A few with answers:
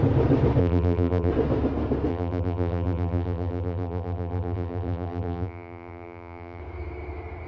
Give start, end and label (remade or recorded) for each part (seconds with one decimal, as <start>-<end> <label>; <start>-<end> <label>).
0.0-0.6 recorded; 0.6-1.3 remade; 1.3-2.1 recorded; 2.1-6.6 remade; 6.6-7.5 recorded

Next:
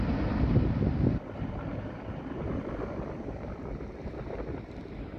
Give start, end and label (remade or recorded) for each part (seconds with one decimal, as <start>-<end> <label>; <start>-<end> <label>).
0.0-5.2 recorded

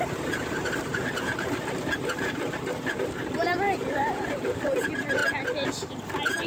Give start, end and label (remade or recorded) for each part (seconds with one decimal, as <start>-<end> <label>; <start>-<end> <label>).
0.0-5.2 remade; 5.2-6.5 recorded